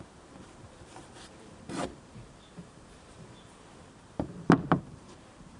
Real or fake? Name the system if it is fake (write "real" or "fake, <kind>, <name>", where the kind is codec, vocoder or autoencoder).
fake, vocoder, BigVGAN v2